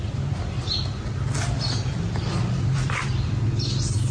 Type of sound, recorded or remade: remade